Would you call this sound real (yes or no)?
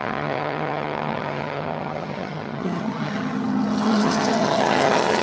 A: no